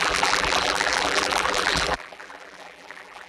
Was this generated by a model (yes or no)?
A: yes